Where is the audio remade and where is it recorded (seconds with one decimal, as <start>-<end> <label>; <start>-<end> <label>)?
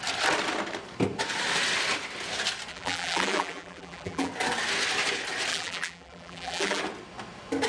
0.0-2.7 recorded; 2.7-4.3 remade; 4.3-5.5 recorded; 5.5-6.8 remade; 6.8-7.7 recorded